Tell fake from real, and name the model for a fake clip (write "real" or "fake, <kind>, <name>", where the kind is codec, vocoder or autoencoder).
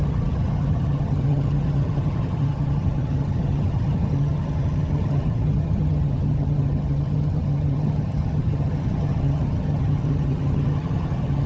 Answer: fake, vocoder, HiFi-GAN